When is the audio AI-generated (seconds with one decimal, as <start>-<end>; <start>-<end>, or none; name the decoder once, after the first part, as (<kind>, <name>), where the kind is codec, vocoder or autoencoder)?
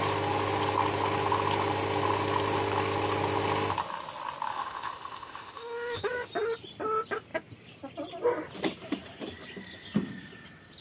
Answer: 4.5-6.1 (autoencoder, DAC-VAE)